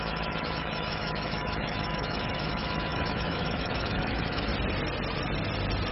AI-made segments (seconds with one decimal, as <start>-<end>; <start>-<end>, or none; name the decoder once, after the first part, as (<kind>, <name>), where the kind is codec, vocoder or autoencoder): 0.0-4.5 (autoencoder, DAC-VAE)